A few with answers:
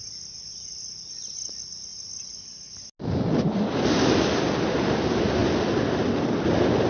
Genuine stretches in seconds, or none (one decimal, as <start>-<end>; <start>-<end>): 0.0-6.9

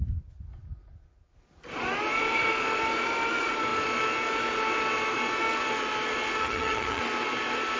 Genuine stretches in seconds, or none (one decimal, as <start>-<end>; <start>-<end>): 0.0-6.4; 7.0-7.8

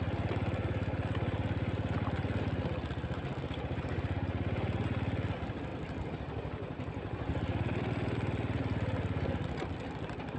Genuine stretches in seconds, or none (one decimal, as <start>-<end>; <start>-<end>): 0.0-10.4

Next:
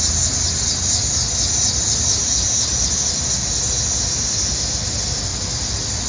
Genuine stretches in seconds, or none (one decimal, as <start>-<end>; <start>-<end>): 0.0-6.1

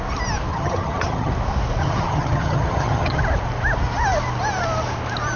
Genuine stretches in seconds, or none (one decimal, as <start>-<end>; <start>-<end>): 0.0-0.5; 1.3-1.8; 3.2-5.4